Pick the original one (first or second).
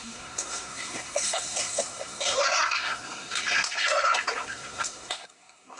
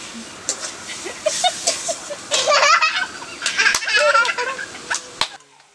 second